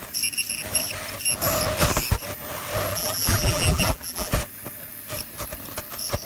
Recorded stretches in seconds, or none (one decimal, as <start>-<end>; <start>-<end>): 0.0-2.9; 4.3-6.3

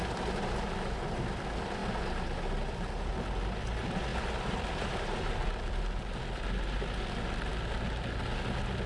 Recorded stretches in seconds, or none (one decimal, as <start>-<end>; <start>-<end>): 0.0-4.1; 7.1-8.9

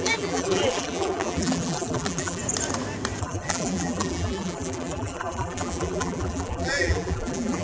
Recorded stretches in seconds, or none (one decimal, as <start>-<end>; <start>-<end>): 2.4-3.2

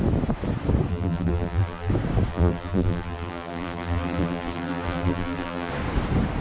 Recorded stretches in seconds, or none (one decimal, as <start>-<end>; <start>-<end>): 0.0-0.9; 1.9-2.3; 5.7-6.4